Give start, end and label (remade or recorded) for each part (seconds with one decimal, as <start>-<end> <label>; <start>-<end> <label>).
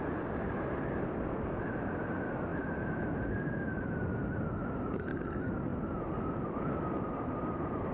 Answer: 0.0-7.9 recorded